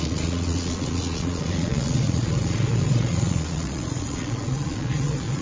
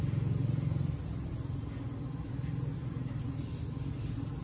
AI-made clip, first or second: first